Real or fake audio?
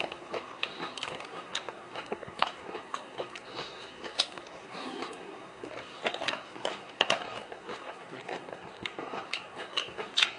fake